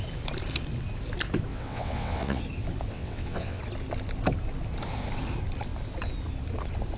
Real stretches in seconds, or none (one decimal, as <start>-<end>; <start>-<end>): 0.0-1.5; 2.4-2.9; 3.6-7.0